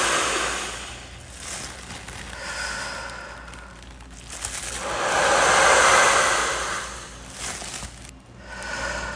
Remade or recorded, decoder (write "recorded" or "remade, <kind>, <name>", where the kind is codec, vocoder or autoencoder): recorded